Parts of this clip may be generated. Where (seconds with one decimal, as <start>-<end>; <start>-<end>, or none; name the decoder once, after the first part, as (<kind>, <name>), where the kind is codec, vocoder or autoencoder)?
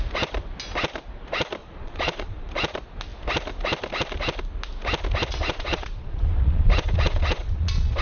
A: 1.6-2.5 (vocoder, Vocos); 5.3-8.0